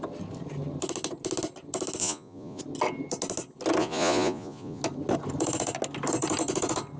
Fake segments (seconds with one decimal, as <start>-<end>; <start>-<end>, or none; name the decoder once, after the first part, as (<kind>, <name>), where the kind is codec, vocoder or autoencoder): 2.0-2.6 (vocoder, Vocos); 3.8-4.8